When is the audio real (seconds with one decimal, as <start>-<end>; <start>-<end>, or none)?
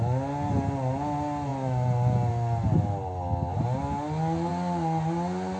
0.0-5.6